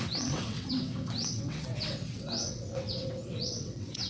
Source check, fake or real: fake